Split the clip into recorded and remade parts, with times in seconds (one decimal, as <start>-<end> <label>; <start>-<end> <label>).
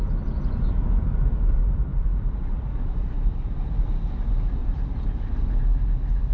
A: 0.0-1.9 recorded; 1.9-4.1 remade; 4.1-4.6 recorded; 4.6-5.5 remade; 5.5-6.3 recorded